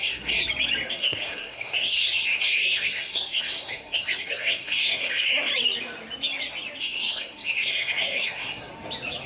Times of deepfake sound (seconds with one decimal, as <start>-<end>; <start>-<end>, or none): 0.0-0.4; 0.9-5.5; 6.8-8.7